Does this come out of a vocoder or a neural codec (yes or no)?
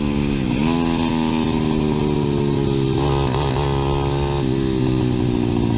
no